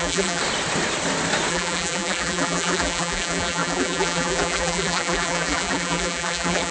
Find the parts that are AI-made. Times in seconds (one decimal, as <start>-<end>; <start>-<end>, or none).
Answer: 0.0-0.4; 1.5-6.7